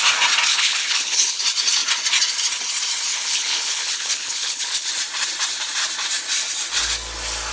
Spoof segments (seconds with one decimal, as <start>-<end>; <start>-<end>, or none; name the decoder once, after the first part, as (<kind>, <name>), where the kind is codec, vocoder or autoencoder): 0.5-1.4 (codec, HILCodec); 3.1-4.9